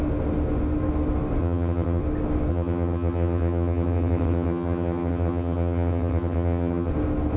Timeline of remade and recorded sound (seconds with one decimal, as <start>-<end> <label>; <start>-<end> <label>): 0.0-1.4 recorded; 1.4-2.0 remade; 2.0-2.5 recorded; 2.5-6.9 remade; 6.9-7.4 recorded